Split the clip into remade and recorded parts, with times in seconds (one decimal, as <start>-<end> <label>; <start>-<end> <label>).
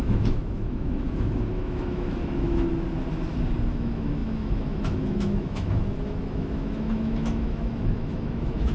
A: 0.0-2.7 remade; 2.7-3.7 recorded; 3.7-8.7 remade